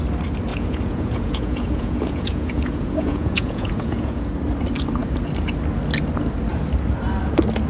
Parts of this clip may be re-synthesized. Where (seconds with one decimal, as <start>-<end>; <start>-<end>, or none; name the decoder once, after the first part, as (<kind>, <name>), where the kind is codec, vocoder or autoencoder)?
0.5-4.3 (vocoder, Vocos)